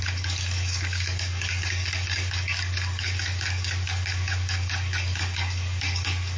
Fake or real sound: fake